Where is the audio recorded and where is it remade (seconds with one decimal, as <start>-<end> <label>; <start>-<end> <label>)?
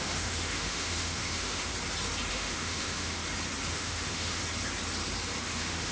0.0-1.7 remade; 1.7-2.3 recorded; 2.3-3.2 remade; 3.2-3.7 recorded; 3.7-4.4 remade; 4.4-5.4 recorded; 5.4-5.9 remade